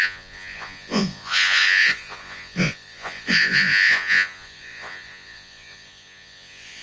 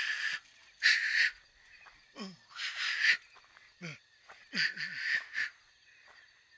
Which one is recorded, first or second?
second